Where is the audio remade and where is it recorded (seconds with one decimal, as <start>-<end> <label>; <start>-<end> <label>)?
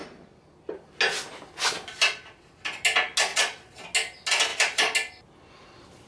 0.0-3.3 recorded; 3.3-3.8 remade; 3.8-6.1 recorded